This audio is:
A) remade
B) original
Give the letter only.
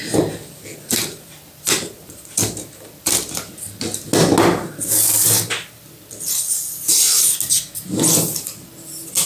B